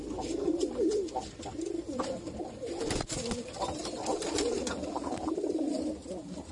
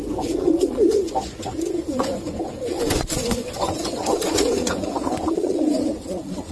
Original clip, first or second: first